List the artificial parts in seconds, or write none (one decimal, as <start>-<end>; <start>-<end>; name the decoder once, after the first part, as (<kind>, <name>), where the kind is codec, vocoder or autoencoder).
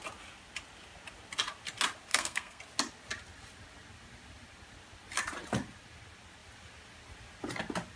2.1-2.6 (codec, SNAC)